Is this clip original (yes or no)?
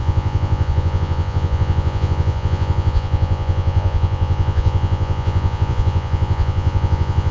no